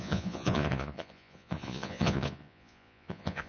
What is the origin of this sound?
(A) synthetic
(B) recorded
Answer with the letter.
A